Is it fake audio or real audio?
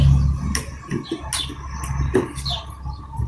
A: real